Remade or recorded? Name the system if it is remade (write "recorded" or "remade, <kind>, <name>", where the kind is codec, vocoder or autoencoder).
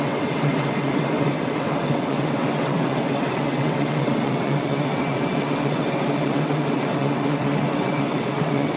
remade, vocoder, WaveNeXt